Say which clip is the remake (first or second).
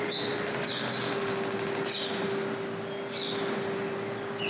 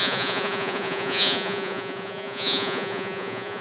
second